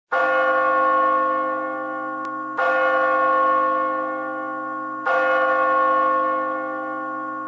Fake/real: real